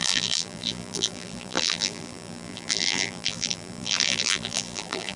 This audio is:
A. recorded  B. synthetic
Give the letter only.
B